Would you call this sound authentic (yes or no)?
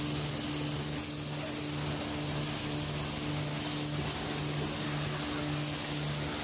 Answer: yes